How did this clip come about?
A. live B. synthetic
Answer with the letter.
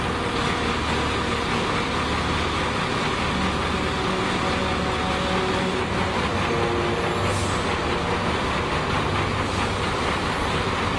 A